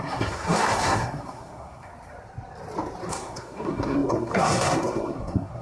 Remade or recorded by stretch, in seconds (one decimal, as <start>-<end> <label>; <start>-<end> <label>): 0.0-1.9 remade; 1.9-3.1 recorded; 3.1-5.6 remade